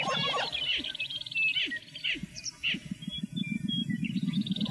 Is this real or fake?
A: real